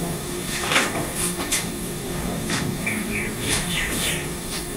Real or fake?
fake